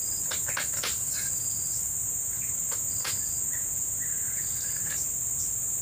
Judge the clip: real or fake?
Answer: real